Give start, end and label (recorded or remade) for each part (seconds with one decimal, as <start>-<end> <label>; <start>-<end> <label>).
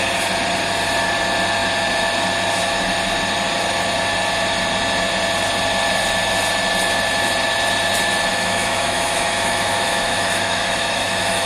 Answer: 0.0-8.3 recorded; 8.3-11.5 remade